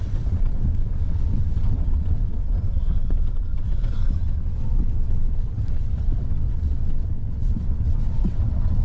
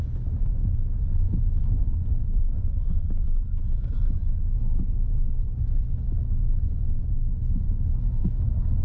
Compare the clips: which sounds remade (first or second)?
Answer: first